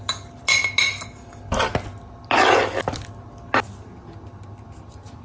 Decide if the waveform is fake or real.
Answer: real